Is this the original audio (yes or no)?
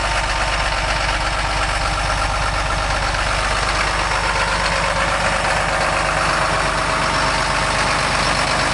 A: yes